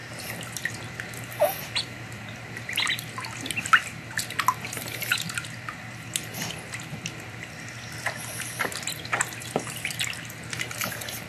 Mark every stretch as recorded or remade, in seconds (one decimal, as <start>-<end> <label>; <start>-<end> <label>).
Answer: 0.0-11.3 recorded

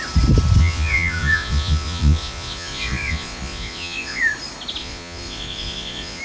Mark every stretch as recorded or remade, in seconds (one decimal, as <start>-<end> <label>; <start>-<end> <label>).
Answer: 0.0-0.6 recorded; 0.6-4.2 remade; 4.2-4.8 recorded; 4.8-6.2 remade

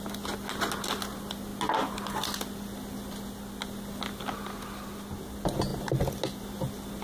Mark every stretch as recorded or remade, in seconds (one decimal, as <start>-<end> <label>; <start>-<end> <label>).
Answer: 0.0-7.0 recorded